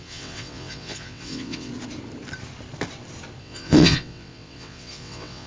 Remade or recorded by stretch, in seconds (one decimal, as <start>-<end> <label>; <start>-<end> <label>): 0.0-1.7 remade; 1.7-3.4 recorded; 3.4-5.5 remade